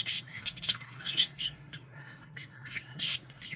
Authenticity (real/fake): fake